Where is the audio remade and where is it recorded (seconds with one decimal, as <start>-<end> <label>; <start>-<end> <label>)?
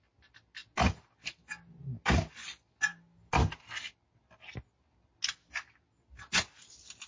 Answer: 0.0-7.1 recorded